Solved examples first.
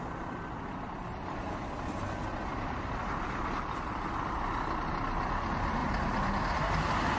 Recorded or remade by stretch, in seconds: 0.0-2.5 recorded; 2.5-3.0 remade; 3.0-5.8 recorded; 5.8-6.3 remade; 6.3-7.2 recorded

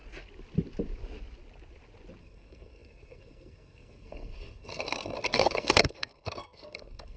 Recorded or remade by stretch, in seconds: 0.0-2.2 recorded; 2.2-7.2 remade

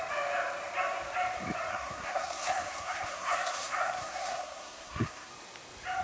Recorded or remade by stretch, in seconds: 0.0-1.7 recorded; 1.7-5.3 remade; 5.3-6.0 recorded

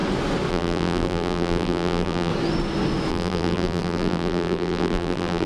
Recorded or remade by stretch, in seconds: 0.0-0.5 recorded; 0.5-2.3 remade; 2.3-3.1 recorded; 3.1-5.5 remade

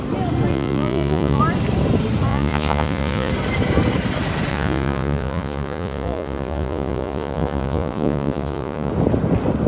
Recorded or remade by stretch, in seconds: 0.0-0.5 recorded; 0.5-1.4 remade; 1.4-2.3 recorded; 2.3-3.3 remade; 3.3-4.5 recorded; 4.5-8.9 remade; 8.9-9.7 recorded